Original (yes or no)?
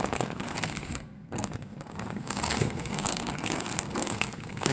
no